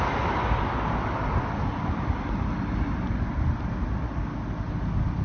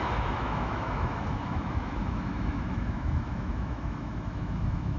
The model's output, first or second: second